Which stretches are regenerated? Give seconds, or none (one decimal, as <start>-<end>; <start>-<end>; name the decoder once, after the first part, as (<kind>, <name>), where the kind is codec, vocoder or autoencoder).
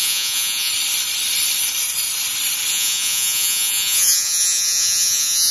0.0-0.7 (vocoder, Vocos); 2.7-5.5